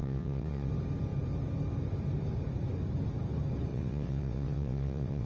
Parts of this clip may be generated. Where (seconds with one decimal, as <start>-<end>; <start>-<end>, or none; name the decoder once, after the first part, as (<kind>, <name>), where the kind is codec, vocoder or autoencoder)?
0.0-0.7 (vocoder, WaveNeXt); 3.7-5.3